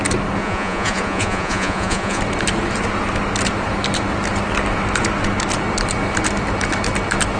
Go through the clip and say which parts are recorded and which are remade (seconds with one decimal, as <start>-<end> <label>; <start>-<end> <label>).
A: 0.0-0.4 recorded; 0.4-2.2 remade; 2.2-7.4 recorded